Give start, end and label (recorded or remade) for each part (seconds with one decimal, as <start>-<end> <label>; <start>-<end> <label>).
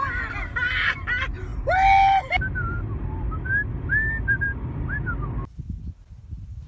0.0-6.7 recorded